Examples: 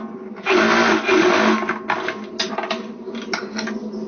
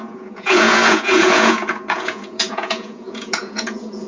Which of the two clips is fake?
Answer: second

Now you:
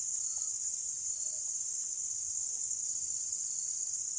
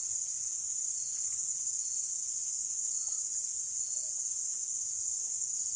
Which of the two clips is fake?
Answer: second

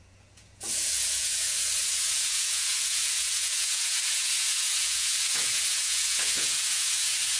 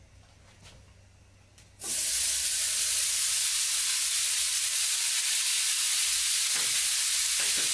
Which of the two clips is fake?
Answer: first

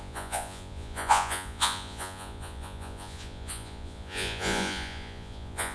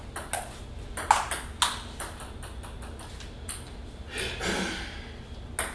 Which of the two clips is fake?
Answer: first